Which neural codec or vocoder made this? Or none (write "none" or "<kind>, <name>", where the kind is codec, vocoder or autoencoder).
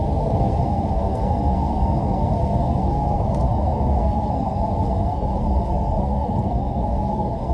codec, SNAC